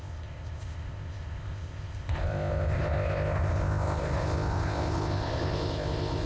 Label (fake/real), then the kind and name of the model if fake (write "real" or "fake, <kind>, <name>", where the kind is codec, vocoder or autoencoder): fake, codec, ZipCodec